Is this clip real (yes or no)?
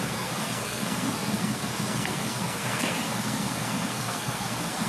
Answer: no